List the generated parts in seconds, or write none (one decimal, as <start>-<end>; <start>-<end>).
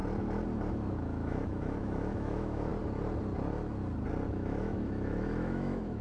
0.7-2.7; 4.3-6.0